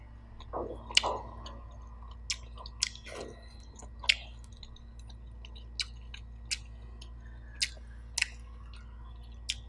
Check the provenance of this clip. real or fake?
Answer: real